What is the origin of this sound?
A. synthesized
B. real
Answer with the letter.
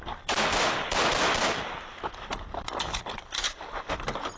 B